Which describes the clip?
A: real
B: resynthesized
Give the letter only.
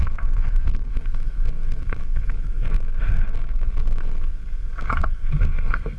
B